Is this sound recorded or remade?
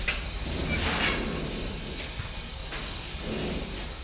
recorded